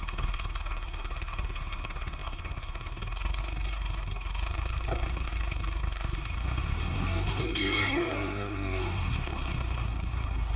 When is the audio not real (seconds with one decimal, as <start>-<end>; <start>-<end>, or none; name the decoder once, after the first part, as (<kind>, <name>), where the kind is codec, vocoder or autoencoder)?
0.0-10.6 (codec, SNAC)